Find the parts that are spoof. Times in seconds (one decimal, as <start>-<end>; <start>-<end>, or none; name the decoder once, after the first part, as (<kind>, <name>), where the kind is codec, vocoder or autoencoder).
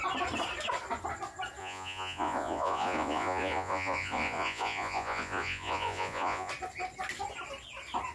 1.6-6.5 (vocoder, Vocos)